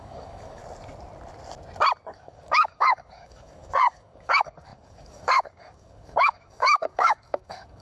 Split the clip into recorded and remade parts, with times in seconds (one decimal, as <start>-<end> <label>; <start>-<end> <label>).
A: 0.0-0.6 remade; 0.6-2.1 recorded; 2.1-7.8 remade